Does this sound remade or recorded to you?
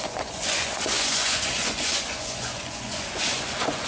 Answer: remade